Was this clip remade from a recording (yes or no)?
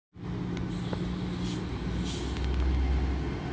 no